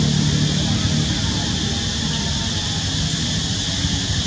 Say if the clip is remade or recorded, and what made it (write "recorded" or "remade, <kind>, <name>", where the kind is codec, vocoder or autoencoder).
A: recorded